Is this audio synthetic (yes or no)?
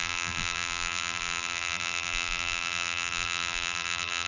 yes